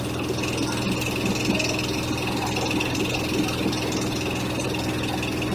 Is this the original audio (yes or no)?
yes